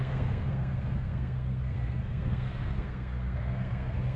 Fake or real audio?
fake